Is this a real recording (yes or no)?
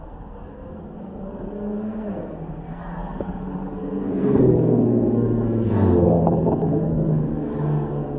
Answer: no